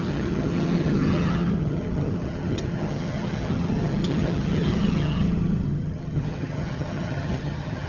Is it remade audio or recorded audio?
remade